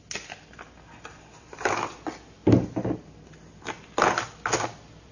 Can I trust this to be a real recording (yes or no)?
yes